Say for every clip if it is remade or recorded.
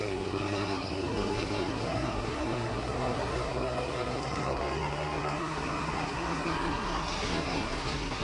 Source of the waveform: remade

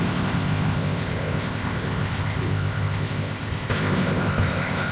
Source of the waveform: remade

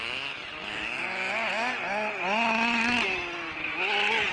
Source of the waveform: recorded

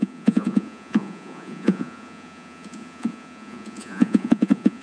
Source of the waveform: remade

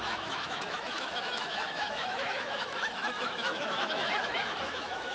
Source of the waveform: remade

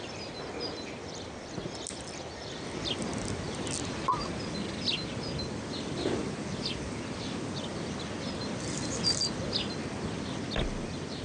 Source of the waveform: recorded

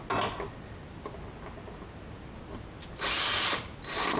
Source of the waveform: recorded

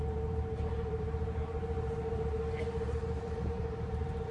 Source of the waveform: remade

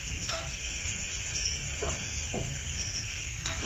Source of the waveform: remade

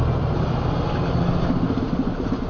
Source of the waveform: recorded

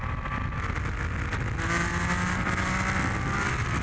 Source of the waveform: recorded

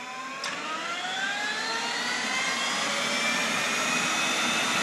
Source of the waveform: recorded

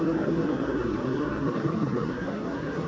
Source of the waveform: remade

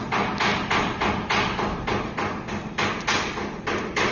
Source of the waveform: recorded